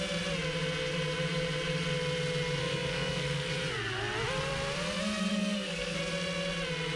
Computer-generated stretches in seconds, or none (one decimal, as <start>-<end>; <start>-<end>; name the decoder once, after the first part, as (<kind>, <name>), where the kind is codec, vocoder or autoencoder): 2.6-3.5 (codec, SNAC); 5.3-6.0